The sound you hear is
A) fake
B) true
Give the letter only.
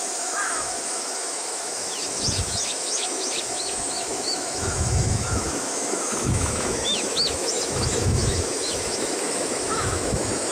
A